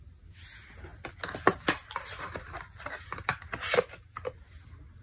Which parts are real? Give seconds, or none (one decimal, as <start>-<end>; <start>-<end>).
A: 0.0-5.0